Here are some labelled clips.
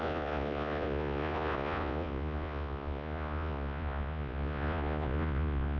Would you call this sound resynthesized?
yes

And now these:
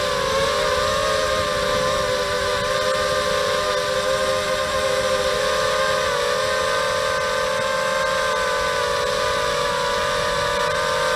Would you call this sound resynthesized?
no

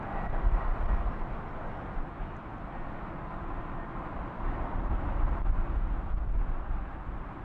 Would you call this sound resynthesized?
no